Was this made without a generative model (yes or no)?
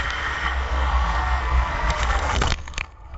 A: no